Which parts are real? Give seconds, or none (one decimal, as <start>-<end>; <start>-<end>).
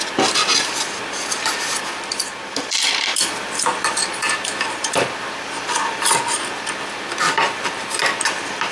0.0-8.7